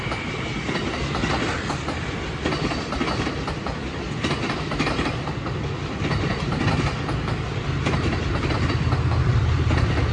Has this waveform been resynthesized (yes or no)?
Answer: yes